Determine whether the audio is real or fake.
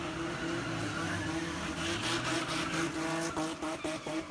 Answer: real